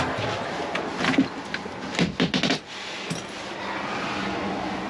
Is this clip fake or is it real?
real